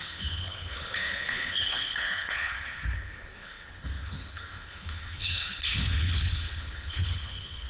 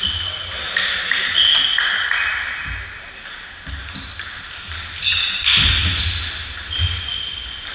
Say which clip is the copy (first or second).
first